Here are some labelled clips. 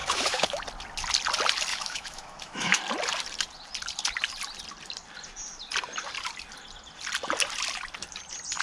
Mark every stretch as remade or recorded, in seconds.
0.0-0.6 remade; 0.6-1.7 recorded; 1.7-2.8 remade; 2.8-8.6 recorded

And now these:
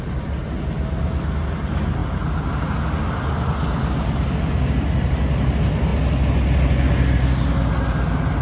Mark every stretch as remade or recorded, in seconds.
0.0-8.4 recorded

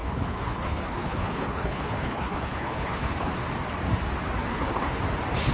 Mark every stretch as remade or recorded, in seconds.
0.0-3.3 remade; 3.3-4.5 recorded; 4.5-5.0 remade; 5.0-5.5 recorded

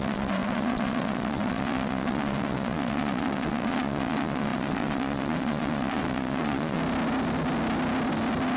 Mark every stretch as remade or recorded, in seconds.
0.0-6.8 remade; 6.8-8.6 recorded

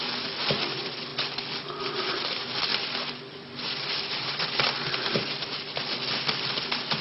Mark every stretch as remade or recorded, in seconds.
0.0-7.0 recorded

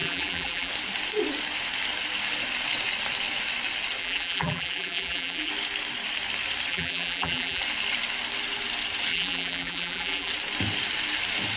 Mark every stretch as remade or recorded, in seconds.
0.0-0.7 remade; 0.7-4.0 recorded; 4.0-5.5 remade; 5.5-6.7 recorded; 6.7-7.6 remade; 7.6-9.1 recorded; 9.1-10.3 remade; 10.3-11.6 recorded

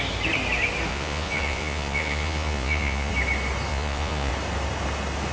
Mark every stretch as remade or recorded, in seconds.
0.0-0.9 recorded; 0.9-3.1 remade; 3.1-3.7 recorded; 3.7-4.3 remade; 4.3-5.3 recorded

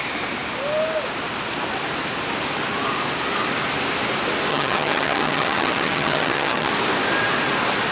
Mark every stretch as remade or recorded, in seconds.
0.0-4.5 recorded; 4.5-6.7 remade; 6.7-7.9 recorded